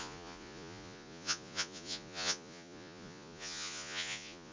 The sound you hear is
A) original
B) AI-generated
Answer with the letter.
B